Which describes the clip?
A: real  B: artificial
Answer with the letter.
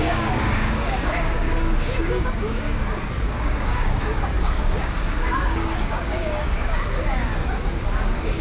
B